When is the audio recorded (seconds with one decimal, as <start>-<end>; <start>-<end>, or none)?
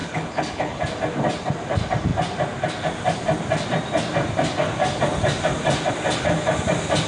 0.8-7.1